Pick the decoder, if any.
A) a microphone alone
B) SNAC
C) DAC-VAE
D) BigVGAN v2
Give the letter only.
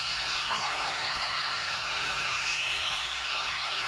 B